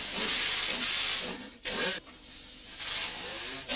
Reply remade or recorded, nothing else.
remade